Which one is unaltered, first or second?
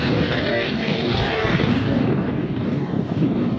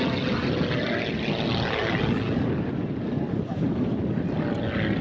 second